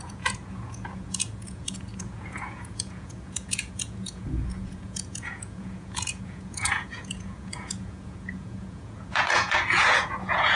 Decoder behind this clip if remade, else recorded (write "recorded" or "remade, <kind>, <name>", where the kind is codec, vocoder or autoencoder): remade, vocoder, Vocos